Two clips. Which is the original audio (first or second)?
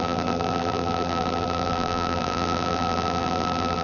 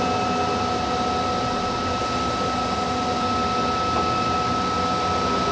second